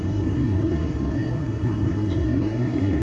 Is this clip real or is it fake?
fake